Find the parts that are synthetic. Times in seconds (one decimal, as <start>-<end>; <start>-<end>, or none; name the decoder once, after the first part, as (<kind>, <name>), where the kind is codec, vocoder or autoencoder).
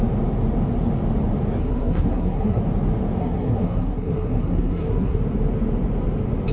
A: 1.6-2.6 (codec, SNAC); 3.2-5.2